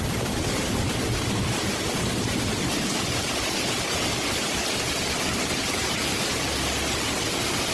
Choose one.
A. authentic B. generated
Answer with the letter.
A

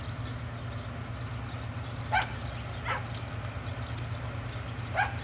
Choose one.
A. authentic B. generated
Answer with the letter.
A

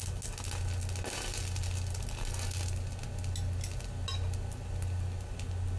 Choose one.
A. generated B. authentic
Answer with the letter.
B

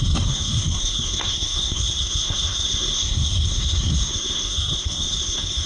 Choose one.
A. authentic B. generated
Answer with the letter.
B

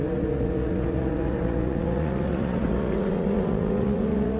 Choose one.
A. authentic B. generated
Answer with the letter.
B